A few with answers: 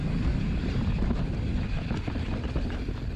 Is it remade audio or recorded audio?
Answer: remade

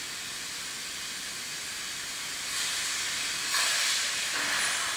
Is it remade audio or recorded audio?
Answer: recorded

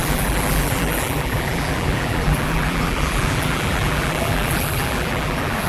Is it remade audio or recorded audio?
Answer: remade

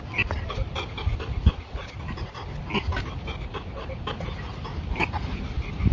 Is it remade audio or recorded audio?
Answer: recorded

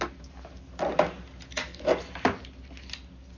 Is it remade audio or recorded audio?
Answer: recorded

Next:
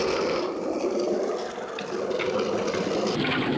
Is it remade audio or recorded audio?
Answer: recorded